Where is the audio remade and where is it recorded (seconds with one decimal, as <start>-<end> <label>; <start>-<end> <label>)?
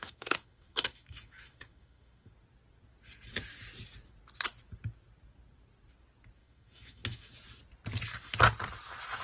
0.0-2.3 remade; 2.3-6.4 recorded; 6.4-7.3 remade; 7.3-9.2 recorded